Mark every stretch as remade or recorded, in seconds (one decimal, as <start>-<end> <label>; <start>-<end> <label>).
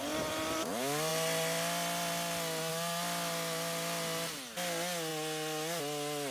0.0-6.3 recorded